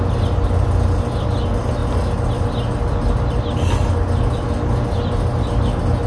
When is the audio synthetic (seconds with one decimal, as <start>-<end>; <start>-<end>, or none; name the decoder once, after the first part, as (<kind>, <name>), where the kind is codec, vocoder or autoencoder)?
none